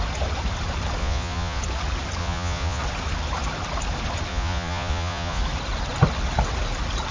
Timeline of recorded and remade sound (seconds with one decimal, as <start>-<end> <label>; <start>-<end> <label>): 0.0-1.0 recorded; 1.0-1.6 remade; 1.6-2.2 recorded; 2.2-2.8 remade; 2.8-4.3 recorded; 4.3-5.4 remade; 5.4-7.1 recorded